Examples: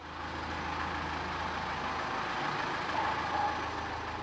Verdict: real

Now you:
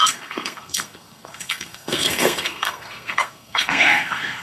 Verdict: fake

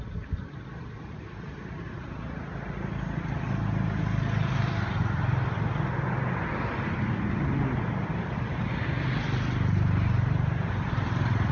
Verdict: real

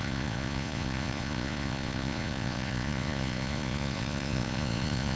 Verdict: fake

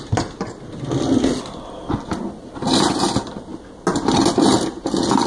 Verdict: real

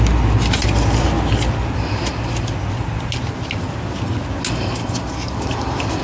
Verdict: real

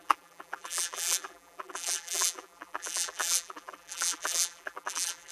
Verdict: fake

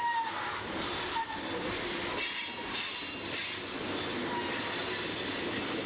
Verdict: real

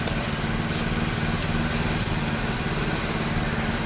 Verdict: real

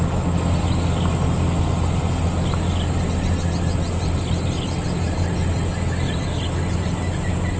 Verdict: real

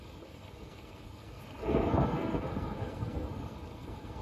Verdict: fake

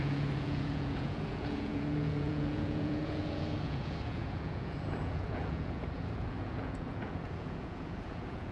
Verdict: fake